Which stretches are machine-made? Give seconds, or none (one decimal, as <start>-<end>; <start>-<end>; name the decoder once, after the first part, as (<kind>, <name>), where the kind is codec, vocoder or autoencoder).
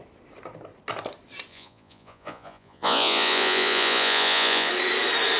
1.5-4.7 (vocoder, Vocos)